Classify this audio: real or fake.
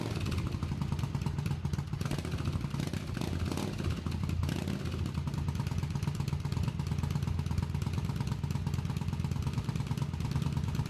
real